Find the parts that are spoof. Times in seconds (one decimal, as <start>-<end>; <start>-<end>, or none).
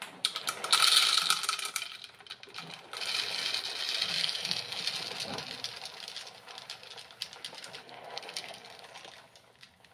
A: 4.2-4.8; 7.8-8.8